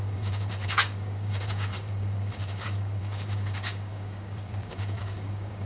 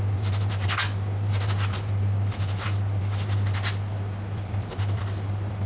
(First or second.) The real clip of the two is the second